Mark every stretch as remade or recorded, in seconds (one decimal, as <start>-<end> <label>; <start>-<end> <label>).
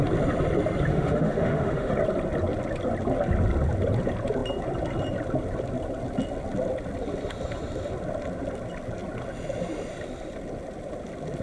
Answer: 0.0-0.9 recorded; 0.9-1.9 remade; 1.9-11.4 recorded